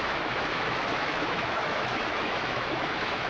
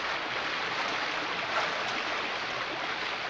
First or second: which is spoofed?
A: first